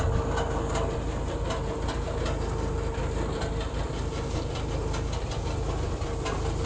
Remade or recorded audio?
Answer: recorded